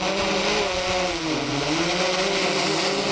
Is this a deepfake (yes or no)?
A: no